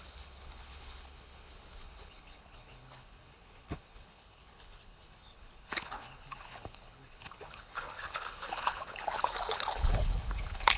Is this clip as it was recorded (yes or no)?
no